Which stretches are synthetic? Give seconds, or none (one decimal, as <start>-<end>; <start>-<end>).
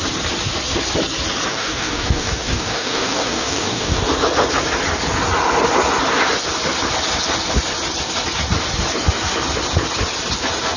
1.5-4.0